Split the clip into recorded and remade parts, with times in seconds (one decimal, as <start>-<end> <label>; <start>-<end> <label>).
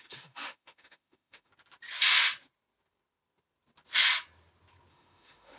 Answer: 0.0-1.5 remade; 1.5-4.9 recorded; 4.9-5.6 remade